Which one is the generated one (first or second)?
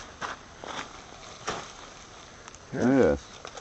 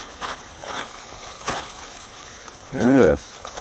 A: second